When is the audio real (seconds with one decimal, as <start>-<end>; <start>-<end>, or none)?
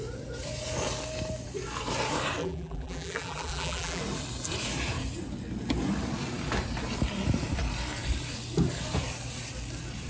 0.0-2.4; 4.0-10.1